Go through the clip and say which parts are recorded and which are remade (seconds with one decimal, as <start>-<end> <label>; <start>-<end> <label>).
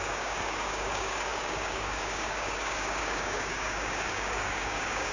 0.0-5.1 remade